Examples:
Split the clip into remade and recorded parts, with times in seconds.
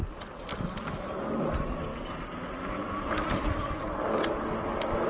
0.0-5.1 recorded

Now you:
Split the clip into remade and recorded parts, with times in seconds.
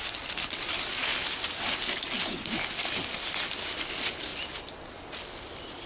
0.0-5.9 recorded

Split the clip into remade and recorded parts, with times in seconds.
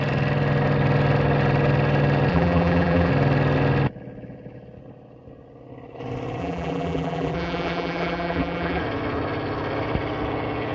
0.0-2.3 recorded; 2.3-3.1 remade; 3.1-6.4 recorded; 6.4-8.8 remade; 8.8-10.7 recorded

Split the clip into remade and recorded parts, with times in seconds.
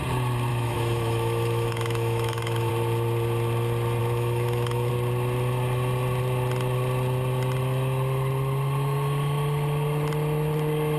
0.0-0.5 recorded; 0.5-2.7 remade; 2.7-4.0 recorded; 4.0-4.9 remade; 4.9-11.0 recorded